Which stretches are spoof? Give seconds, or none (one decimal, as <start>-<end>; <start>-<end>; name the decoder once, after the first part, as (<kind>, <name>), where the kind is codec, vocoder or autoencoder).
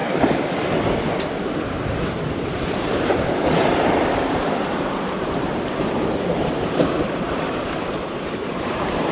1.5-9.1 (vocoder, BigVGAN v2)